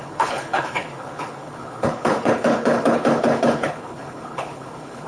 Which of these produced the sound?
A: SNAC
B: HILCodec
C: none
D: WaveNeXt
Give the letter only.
B